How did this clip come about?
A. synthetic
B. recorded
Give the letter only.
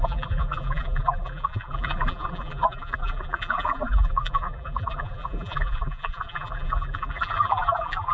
A